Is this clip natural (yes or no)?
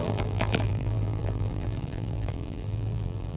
no